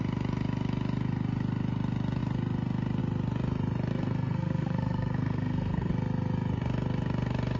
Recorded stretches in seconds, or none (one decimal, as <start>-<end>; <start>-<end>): 0.0-3.9; 5.9-7.6